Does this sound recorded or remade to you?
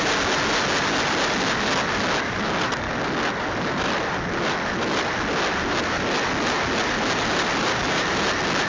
recorded